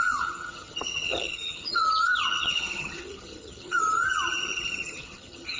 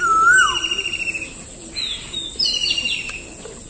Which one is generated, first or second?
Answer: first